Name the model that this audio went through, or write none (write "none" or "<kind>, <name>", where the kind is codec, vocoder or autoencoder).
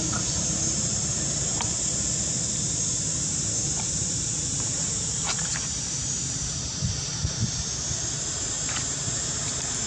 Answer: vocoder, BigVGAN v2